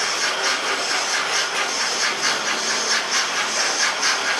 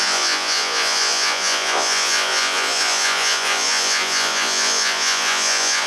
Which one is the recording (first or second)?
first